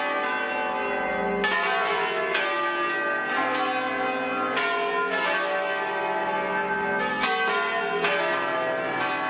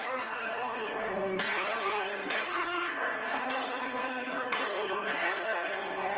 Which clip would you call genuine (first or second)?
first